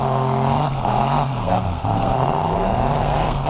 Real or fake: fake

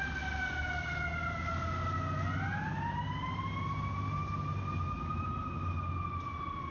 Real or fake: real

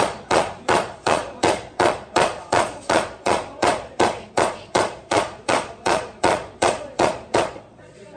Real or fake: fake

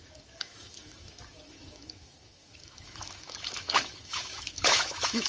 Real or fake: fake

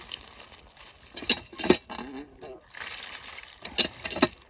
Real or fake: real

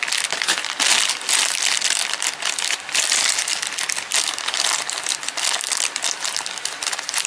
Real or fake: real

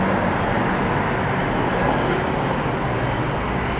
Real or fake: real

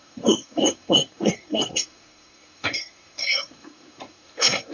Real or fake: fake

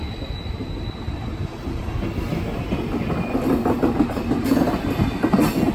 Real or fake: real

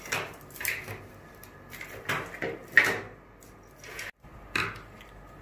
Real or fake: real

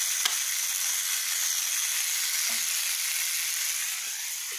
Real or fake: real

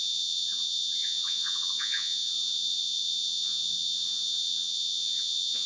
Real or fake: fake